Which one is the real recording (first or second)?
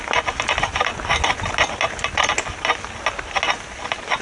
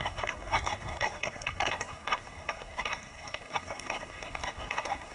first